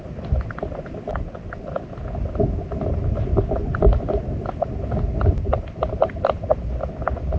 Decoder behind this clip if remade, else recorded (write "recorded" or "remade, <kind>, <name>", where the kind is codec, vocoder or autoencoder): remade, vocoder, BigVGAN v2